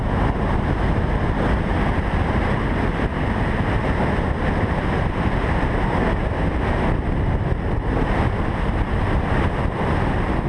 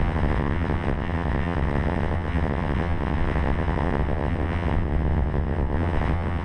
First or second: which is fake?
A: second